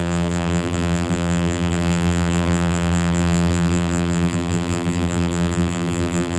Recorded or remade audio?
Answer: remade